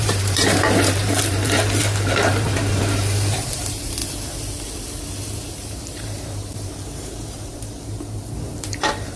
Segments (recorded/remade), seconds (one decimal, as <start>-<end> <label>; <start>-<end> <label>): 0.0-4.0 remade; 4.0-5.5 recorded; 5.5-9.2 remade